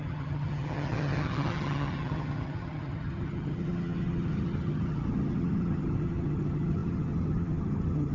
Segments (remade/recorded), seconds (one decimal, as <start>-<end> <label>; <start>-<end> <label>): 0.0-8.1 remade